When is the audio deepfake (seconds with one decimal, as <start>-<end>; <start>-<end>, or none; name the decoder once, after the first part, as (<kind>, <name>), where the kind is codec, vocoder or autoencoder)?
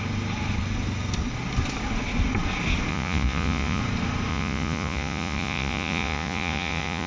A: 2.9-3.8 (vocoder, Vocos); 4.3-7.1